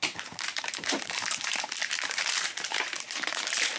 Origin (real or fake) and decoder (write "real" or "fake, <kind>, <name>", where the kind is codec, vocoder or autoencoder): fake, vocoder, BigVGAN v2